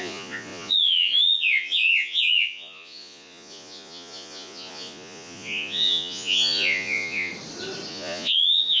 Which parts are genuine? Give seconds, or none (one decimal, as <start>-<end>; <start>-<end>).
7.3-7.9